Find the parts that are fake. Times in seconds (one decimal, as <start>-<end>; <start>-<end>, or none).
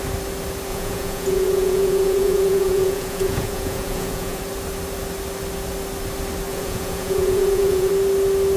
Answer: 0.7-4.4; 6.5-7.9